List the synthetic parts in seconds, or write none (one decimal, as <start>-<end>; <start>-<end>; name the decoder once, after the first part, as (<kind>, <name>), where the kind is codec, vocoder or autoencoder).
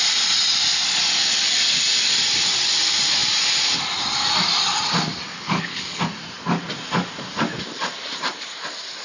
5.3-6.0 (codec, HILCodec)